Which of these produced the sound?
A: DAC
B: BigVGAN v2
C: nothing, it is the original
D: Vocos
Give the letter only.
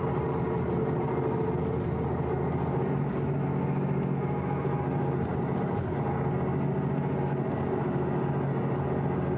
C